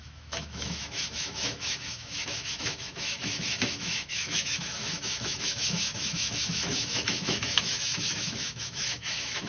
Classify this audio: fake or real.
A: fake